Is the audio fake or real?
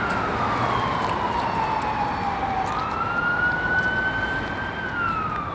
real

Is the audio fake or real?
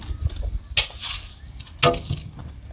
real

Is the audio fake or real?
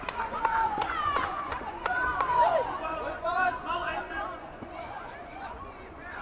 fake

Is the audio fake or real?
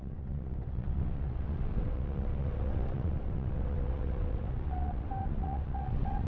fake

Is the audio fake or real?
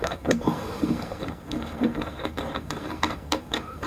fake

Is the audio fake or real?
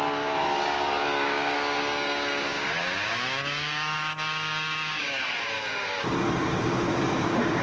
fake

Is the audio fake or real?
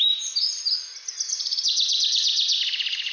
real